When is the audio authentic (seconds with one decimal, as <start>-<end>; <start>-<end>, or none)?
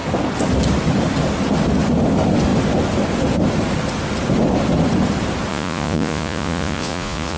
0.0-5.5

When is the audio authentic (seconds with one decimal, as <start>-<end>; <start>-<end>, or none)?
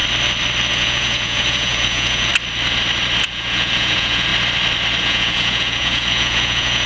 0.0-0.7; 2.3-3.2; 4.3-5.0